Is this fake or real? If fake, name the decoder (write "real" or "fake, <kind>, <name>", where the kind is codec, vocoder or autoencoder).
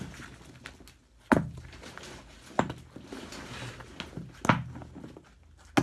real